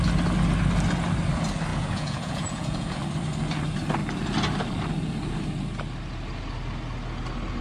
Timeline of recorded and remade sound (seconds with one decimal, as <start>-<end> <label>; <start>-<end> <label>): 0.0-1.7 recorded; 1.7-3.0 remade; 3.0-7.6 recorded